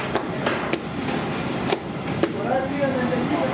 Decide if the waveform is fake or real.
real